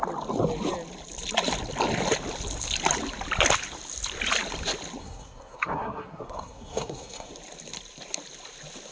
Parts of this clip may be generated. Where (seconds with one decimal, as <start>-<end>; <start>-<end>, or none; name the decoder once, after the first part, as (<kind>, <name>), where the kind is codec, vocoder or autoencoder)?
5.0-7.3 (codec, SNAC)